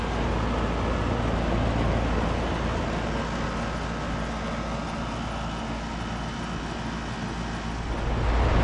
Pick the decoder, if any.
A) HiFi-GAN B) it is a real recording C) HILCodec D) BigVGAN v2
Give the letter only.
B